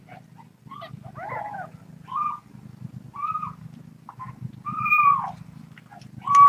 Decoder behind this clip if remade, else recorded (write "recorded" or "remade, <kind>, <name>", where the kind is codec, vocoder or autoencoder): recorded